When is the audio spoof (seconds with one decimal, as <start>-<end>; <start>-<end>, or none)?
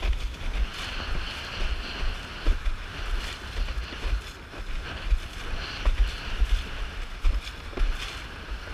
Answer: none